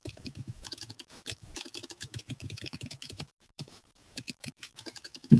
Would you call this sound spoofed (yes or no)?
yes